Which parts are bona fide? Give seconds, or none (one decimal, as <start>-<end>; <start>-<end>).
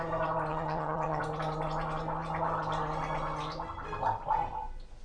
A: 0.0-0.5; 1.2-5.0